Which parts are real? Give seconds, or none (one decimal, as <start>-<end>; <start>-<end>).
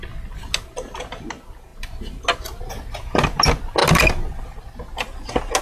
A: 0.0-5.6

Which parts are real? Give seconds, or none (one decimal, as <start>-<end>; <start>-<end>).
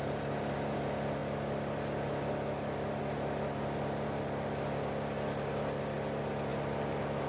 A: 0.0-7.3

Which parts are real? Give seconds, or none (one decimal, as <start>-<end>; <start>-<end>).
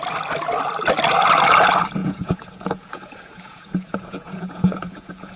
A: 0.0-2.0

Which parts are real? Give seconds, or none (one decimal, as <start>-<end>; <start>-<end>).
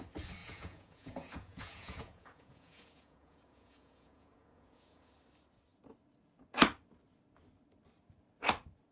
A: 0.0-0.4; 5.1-8.9